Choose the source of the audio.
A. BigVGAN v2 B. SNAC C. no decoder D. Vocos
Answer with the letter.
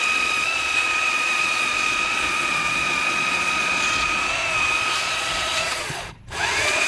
D